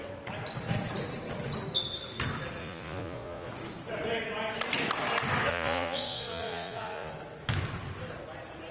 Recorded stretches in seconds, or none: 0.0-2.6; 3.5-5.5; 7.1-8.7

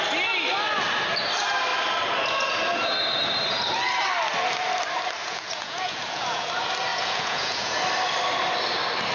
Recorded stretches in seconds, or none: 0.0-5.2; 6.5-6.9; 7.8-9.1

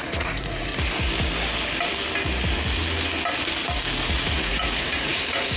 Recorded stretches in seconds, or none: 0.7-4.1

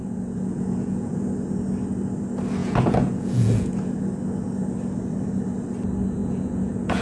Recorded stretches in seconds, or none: 1.2-2.6; 3.9-6.2